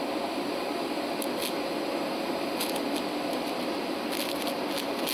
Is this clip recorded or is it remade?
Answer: recorded